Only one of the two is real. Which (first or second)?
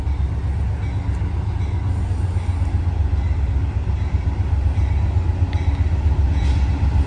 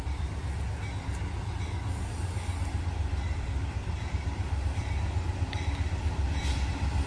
first